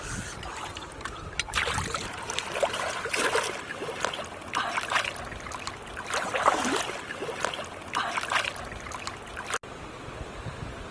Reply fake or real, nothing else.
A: real